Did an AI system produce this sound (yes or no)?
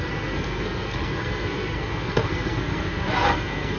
yes